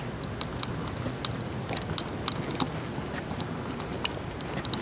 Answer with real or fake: real